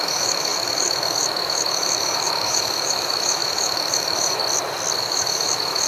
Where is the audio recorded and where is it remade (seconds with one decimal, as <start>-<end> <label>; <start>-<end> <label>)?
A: 0.0-4.4 remade; 4.4-5.0 recorded; 5.0-5.9 remade